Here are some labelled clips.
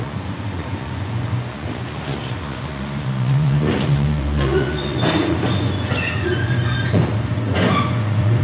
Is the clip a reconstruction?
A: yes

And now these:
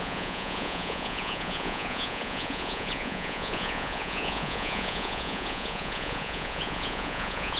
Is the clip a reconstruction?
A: yes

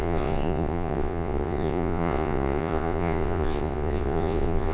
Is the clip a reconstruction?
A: yes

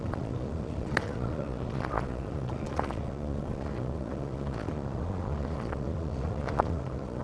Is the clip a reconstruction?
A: yes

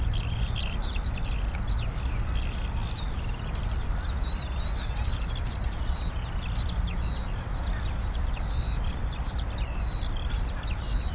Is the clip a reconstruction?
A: no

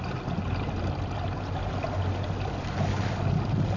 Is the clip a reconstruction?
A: no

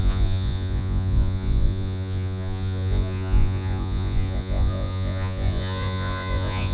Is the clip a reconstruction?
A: yes